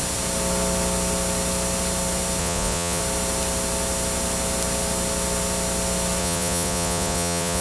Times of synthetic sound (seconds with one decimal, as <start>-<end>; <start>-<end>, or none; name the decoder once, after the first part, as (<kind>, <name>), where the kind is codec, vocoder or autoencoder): 2.4-3.0 (vocoder, Vocos); 6.2-7.6